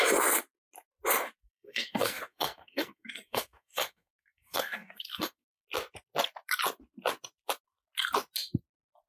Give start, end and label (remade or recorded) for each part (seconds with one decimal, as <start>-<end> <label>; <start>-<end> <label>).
0.0-1.4 recorded; 1.4-5.6 remade; 5.6-9.1 recorded